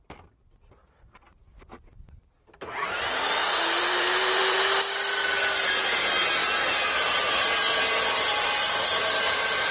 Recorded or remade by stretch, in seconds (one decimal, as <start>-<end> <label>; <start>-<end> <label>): 0.0-3.4 recorded; 3.4-4.6 remade; 4.6-6.4 recorded; 6.4-9.7 remade